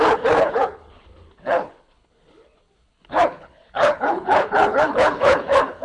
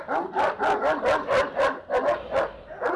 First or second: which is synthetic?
first